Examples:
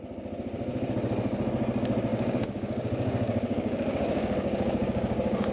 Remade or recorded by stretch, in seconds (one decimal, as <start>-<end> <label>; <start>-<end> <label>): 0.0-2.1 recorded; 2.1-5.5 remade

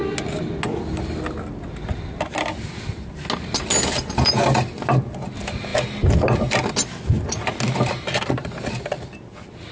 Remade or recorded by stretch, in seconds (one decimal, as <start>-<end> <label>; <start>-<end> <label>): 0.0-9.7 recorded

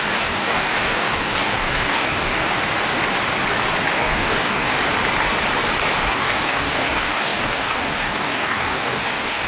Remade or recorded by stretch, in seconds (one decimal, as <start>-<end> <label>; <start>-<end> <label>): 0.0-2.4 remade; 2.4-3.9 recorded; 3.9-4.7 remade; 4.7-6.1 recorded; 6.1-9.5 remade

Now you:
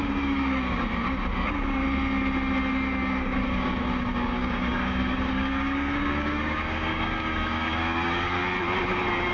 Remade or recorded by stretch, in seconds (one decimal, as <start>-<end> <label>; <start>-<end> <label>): 0.0-1.8 remade; 1.8-2.6 recorded; 2.6-8.4 remade; 8.4-9.3 recorded

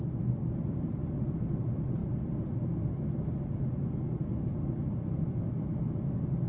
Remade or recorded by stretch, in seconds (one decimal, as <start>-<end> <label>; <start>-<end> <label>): 0.0-6.5 recorded

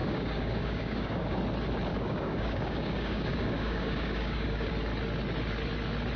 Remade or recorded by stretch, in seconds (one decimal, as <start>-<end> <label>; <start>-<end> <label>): 0.0-1.4 remade; 1.4-1.9 recorded; 1.9-4.7 remade; 4.7-6.2 recorded

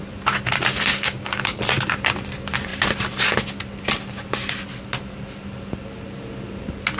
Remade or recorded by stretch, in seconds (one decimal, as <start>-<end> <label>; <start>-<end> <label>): 0.0-0.9 recorded; 0.9-1.6 remade; 1.6-7.0 recorded

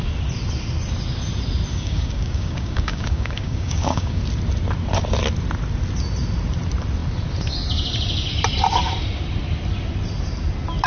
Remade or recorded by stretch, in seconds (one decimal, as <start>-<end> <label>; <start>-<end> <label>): 0.0-1.7 recorded; 1.7-4.2 remade; 4.2-10.9 recorded